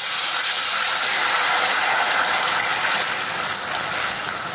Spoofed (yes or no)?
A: no